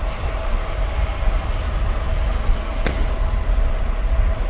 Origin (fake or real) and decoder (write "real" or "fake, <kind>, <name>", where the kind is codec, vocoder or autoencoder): real